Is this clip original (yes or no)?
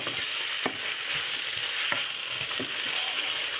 yes